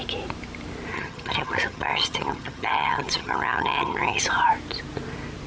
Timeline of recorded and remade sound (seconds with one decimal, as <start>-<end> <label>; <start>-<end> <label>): 0.0-0.9 recorded; 0.9-4.2 remade; 4.2-5.5 recorded